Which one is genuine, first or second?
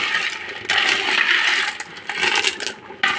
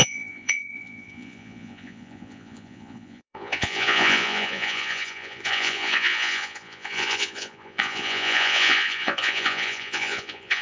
first